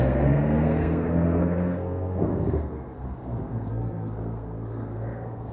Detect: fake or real fake